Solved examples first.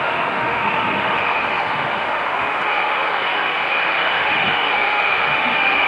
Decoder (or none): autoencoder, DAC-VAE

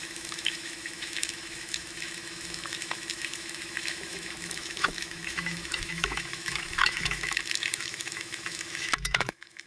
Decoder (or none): autoencoder, DAC-VAE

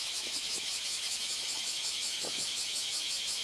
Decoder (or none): autoencoder, DAC-VAE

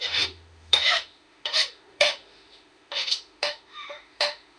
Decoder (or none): autoencoder, DAC-VAE